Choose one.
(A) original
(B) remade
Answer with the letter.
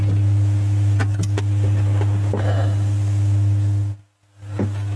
A